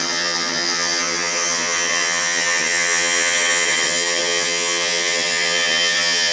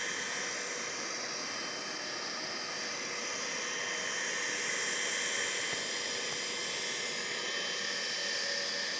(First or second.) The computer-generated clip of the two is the first